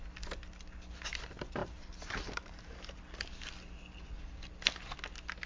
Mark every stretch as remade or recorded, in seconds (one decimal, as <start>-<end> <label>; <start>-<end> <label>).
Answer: 0.0-1.6 recorded; 1.6-3.1 remade; 3.1-5.5 recorded